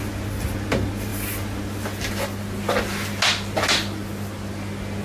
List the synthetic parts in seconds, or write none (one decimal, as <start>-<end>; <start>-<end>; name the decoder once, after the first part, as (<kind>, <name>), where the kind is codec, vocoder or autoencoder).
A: none